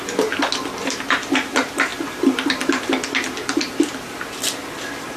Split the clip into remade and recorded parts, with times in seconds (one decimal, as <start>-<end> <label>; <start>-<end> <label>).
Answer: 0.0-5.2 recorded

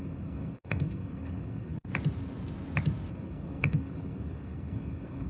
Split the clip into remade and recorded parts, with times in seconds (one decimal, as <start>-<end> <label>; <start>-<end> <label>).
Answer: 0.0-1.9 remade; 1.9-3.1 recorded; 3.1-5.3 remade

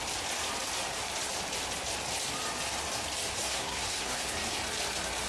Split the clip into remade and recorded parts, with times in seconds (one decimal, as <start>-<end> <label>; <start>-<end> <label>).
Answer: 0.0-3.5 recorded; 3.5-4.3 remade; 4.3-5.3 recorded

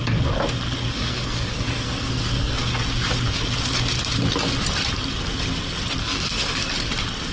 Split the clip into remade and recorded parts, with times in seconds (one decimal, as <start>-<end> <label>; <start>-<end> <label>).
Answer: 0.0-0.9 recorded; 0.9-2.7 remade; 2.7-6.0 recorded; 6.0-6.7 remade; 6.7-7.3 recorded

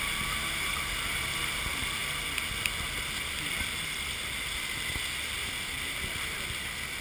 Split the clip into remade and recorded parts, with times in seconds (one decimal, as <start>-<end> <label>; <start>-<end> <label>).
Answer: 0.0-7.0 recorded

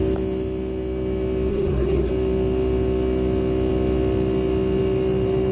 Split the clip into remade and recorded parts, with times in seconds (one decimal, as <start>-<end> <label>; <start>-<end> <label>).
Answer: 0.0-1.5 recorded; 1.5-2.1 remade; 2.1-5.5 recorded